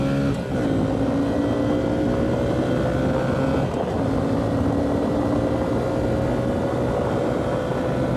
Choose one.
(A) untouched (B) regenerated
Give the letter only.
A